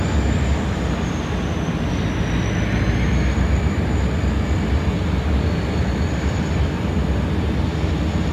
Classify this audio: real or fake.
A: real